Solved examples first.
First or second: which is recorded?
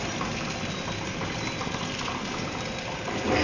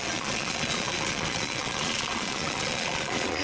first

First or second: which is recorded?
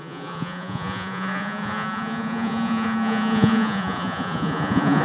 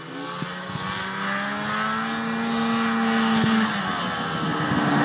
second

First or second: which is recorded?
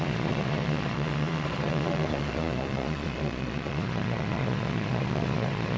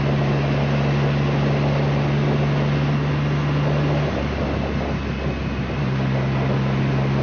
second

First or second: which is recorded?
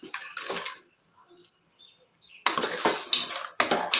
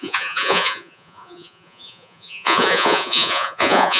first